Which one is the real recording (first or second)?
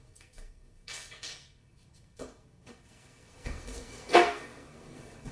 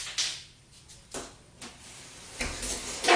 second